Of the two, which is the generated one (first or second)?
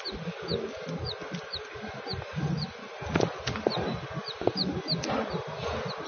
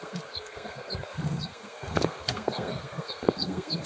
second